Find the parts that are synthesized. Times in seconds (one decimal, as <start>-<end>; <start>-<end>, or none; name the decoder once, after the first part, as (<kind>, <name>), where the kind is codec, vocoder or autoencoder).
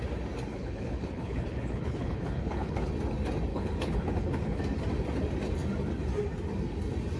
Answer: 0.5-2.9 (codec, HILCodec); 3.5-4.6